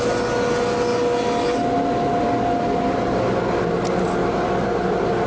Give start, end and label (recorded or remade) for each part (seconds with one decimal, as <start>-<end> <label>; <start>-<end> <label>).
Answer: 0.0-5.3 recorded